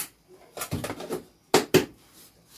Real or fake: real